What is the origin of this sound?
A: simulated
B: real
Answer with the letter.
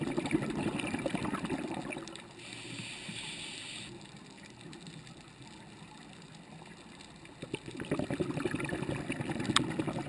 B